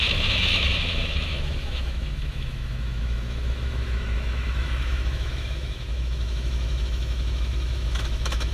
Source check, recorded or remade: remade